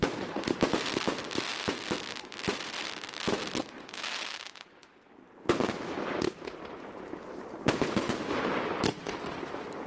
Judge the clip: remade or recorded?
recorded